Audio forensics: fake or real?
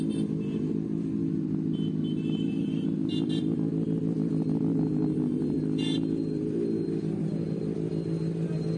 real